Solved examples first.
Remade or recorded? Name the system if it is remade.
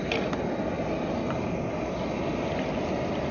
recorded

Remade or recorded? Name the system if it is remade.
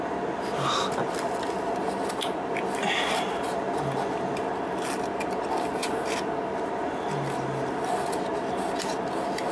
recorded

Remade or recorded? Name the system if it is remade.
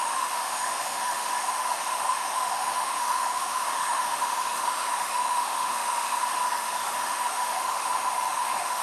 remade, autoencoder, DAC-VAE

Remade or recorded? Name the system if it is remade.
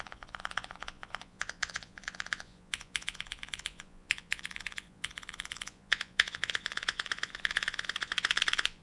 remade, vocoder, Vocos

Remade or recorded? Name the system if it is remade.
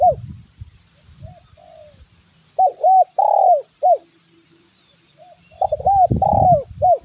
recorded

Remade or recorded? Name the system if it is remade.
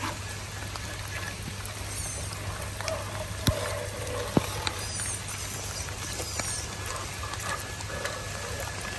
recorded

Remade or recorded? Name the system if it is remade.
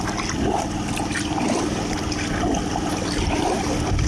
recorded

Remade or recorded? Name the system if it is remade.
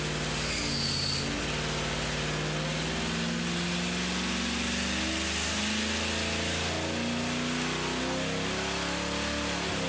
recorded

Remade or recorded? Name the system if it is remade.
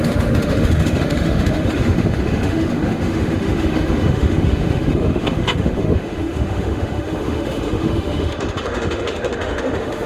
remade, autoencoder, DAC-VAE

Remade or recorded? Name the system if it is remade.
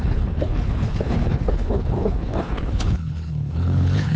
remade, codec, HILCodec